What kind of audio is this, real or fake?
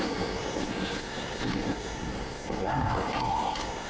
fake